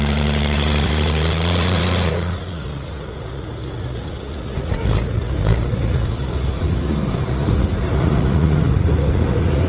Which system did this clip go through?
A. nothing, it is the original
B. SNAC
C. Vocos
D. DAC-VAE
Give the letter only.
C